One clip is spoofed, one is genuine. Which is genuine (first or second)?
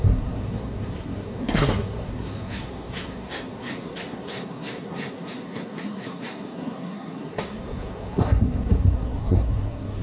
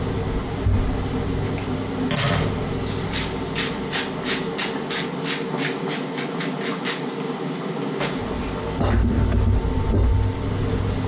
second